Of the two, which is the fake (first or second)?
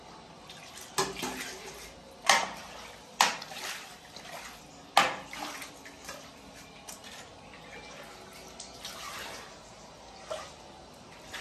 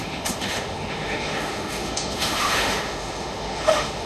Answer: second